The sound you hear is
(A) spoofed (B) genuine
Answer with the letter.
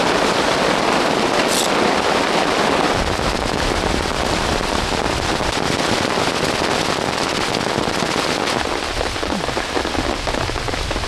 B